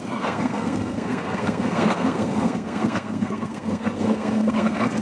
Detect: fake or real fake